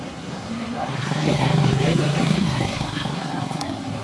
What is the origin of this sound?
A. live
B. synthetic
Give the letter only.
B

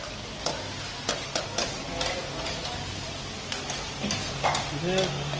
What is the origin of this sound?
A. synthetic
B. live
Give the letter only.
B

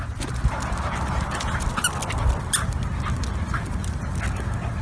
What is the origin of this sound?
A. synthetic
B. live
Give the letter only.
B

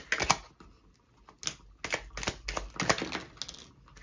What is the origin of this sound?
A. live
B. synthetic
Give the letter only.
A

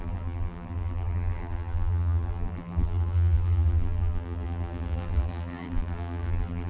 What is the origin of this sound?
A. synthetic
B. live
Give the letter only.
A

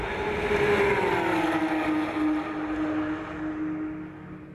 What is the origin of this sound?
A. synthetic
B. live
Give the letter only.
B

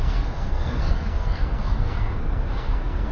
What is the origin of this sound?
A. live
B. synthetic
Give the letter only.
B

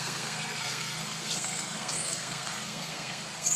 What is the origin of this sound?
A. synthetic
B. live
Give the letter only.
A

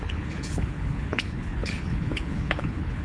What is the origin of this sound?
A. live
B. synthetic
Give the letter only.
B